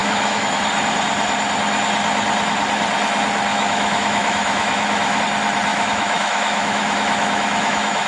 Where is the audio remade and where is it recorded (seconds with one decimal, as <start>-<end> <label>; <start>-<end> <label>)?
0.0-0.6 remade; 0.6-3.5 recorded; 3.5-5.2 remade; 5.2-5.7 recorded; 5.7-8.1 remade